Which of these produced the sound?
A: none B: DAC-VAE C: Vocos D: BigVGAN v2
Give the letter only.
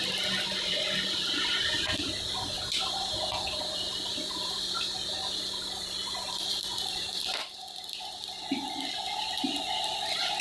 D